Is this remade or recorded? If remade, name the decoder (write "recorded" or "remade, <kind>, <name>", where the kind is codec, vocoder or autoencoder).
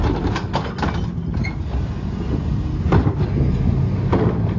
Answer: recorded